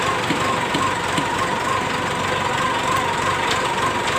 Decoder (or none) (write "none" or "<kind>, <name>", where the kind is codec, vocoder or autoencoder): none